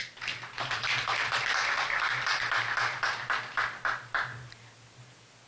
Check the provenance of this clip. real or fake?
real